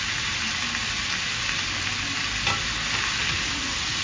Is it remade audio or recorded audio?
recorded